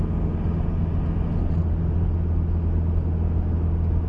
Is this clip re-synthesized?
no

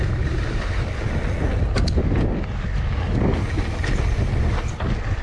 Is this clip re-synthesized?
no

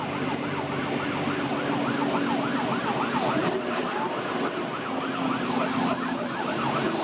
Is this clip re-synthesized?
no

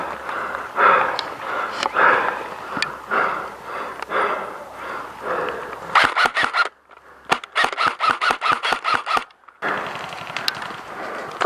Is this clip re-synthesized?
no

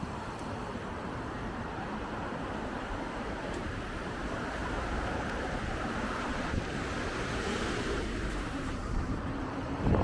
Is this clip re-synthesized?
yes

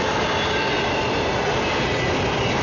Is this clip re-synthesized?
no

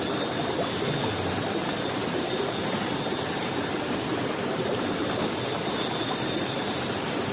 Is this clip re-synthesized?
no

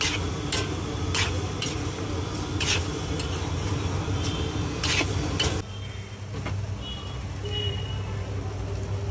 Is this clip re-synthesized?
no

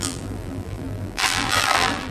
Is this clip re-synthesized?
yes